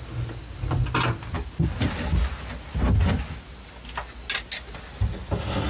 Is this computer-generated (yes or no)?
no